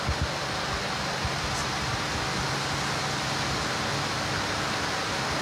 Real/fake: real